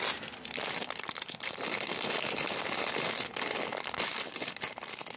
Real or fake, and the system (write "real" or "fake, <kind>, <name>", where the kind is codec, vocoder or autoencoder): real